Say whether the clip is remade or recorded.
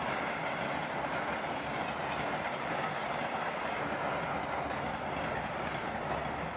recorded